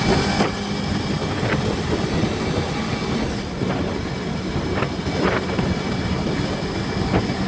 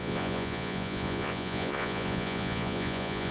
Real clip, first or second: first